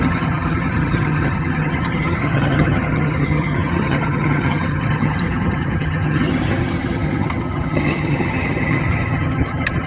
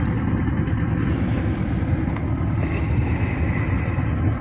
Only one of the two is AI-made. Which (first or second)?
first